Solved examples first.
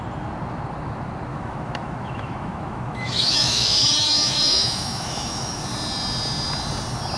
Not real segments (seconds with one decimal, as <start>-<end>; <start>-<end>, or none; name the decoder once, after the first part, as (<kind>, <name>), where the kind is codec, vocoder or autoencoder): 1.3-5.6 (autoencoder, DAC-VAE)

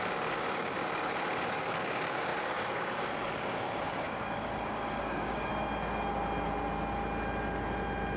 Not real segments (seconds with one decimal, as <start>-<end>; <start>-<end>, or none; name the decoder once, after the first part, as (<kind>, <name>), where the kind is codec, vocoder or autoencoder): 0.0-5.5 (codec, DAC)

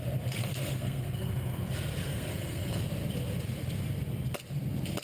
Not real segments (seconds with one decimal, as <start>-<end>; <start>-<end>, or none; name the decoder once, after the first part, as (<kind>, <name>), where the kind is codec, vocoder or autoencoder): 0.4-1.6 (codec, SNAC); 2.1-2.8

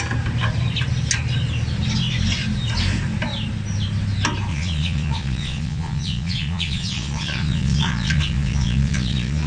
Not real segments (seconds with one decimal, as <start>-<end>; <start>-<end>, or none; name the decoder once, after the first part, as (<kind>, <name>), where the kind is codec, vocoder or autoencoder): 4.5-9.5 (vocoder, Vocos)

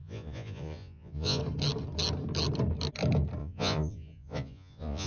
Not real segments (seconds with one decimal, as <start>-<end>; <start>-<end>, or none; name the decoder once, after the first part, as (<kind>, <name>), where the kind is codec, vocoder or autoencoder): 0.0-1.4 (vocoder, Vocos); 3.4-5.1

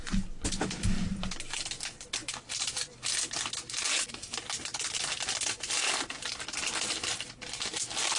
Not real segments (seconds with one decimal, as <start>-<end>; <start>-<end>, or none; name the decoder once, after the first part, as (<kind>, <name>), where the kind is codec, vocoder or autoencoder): none